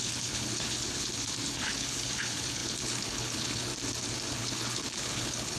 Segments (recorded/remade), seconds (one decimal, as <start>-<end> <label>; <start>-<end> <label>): 0.0-3.7 remade; 3.7-4.3 recorded; 4.3-5.6 remade